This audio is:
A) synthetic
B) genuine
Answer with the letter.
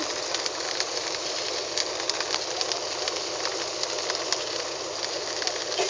B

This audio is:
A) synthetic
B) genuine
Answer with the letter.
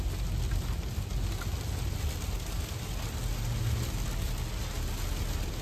B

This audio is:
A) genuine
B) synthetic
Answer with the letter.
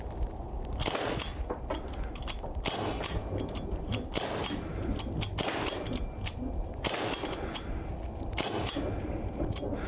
A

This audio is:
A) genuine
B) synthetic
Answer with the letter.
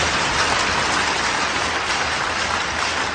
A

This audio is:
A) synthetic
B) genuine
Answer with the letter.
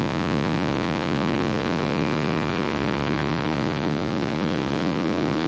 A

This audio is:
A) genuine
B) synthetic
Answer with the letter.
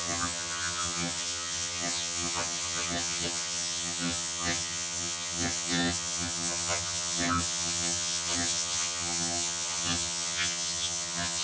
B